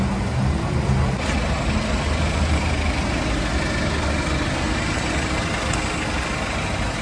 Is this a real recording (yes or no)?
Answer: yes